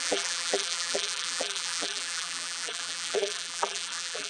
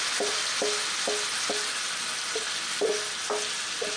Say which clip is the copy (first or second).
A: first